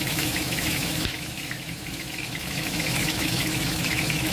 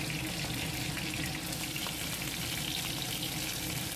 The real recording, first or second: second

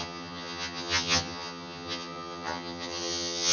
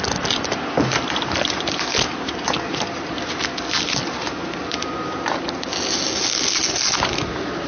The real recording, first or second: second